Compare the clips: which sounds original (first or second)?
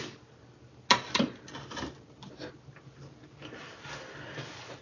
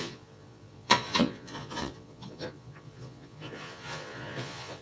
first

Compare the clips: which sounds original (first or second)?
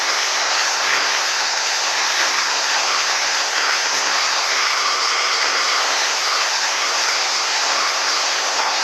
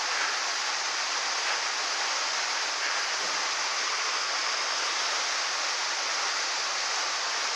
second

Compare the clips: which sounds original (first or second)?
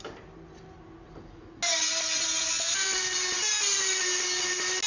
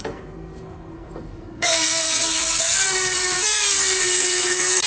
first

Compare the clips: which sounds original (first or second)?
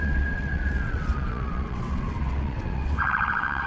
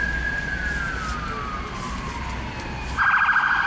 second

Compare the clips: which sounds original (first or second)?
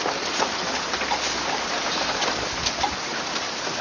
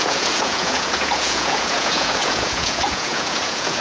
first